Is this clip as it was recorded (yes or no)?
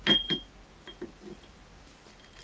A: yes